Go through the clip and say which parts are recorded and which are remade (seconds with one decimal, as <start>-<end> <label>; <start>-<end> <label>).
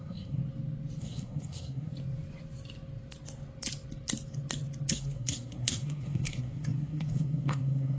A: 0.0-0.4 remade; 0.4-1.0 recorded; 1.0-1.9 remade; 1.9-4.9 recorded; 4.9-8.0 remade